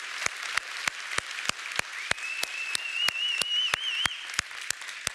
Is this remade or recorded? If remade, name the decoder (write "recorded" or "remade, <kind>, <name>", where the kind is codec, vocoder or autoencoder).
recorded